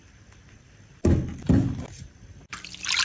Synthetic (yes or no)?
no